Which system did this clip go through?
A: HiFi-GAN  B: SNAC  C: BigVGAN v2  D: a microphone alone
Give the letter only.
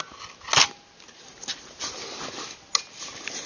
D